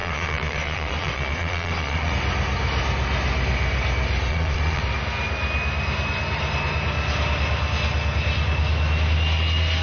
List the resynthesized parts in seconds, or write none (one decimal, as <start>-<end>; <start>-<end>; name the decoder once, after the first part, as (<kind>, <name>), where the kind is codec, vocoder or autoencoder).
0.0-2.1 (vocoder, Vocos); 4.3-4.8